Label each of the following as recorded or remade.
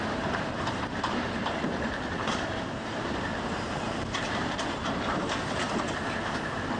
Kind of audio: remade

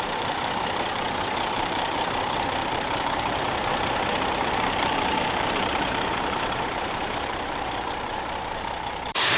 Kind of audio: remade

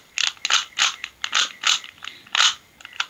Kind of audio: recorded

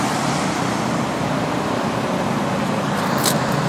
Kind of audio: remade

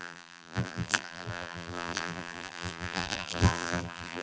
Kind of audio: remade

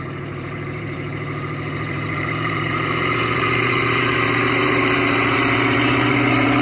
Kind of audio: remade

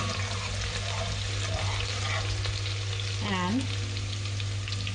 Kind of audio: recorded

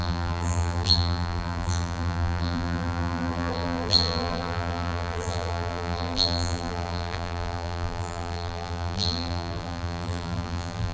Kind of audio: remade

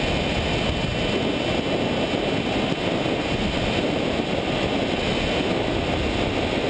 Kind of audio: recorded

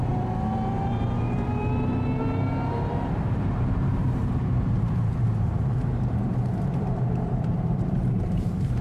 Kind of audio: remade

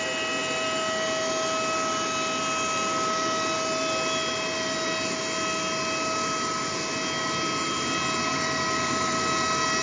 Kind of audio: recorded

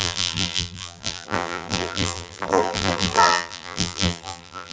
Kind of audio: remade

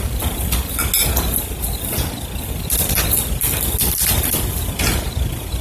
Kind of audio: recorded